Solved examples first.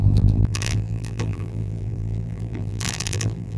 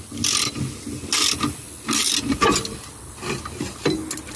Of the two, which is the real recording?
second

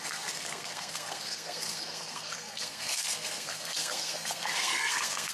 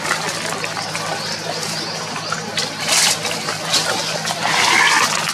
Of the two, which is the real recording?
second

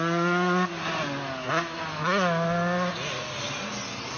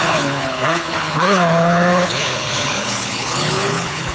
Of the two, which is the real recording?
first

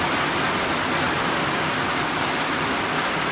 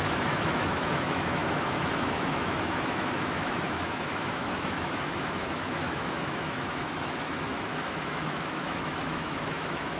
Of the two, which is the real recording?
first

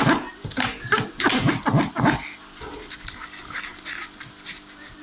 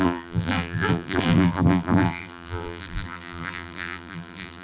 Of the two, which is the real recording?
first